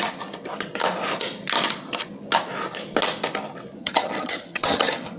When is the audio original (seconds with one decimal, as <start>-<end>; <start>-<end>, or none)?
0.0-3.8